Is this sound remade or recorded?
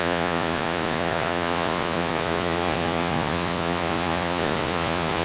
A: remade